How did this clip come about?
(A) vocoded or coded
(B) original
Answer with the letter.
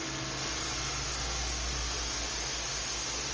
B